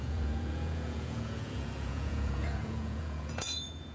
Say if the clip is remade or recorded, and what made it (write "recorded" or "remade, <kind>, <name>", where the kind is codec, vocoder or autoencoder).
remade, vocoder, Vocos